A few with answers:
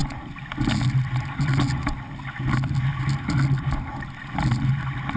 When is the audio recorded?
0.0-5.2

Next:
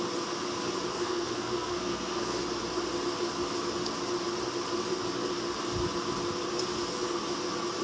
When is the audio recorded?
0.0-0.9; 2.4-7.8

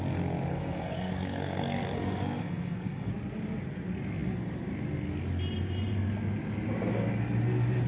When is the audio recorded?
0.0-0.5; 3.1-7.9